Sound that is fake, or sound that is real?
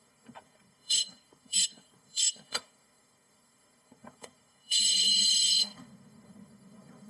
fake